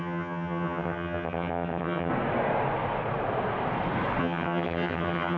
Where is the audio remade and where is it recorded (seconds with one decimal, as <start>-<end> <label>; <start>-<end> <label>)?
0.0-2.1 remade; 2.1-4.2 recorded; 4.2-5.4 remade